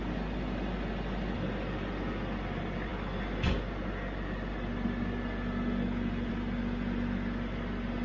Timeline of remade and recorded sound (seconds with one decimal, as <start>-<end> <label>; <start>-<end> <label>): 0.0-8.0 recorded